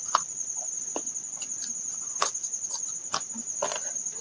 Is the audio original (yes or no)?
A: yes